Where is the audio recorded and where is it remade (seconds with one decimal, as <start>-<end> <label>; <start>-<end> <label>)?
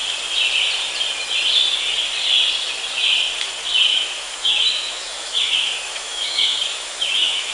0.0-3.9 recorded; 3.9-7.5 remade